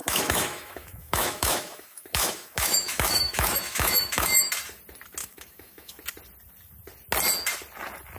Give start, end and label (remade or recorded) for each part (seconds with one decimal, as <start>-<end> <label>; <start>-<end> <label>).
0.0-4.5 remade; 4.5-5.2 recorded; 5.2-6.0 remade; 6.0-8.2 recorded

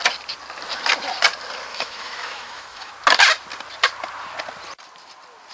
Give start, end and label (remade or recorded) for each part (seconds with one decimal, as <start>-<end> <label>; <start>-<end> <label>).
0.0-1.7 recorded; 1.7-2.9 remade; 2.9-5.5 recorded

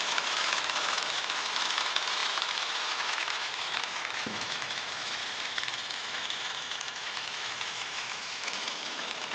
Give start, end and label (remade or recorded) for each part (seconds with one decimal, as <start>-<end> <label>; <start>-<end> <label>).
0.0-5.2 remade; 5.2-5.8 recorded; 5.8-9.3 remade